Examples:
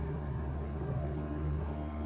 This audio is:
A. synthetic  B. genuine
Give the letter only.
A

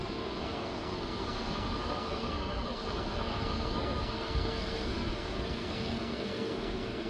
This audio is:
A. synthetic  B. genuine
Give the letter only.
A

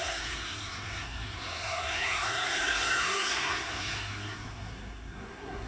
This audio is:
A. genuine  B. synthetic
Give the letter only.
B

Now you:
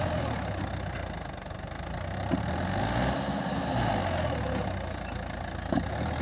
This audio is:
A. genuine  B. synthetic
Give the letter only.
A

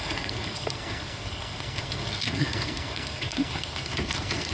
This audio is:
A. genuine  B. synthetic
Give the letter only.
B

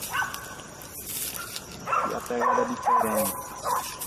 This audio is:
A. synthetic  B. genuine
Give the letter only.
B